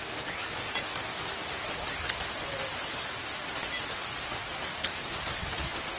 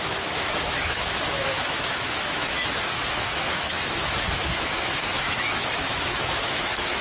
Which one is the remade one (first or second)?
second